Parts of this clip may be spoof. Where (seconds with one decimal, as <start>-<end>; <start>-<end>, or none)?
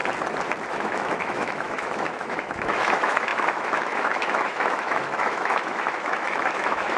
0.7-7.0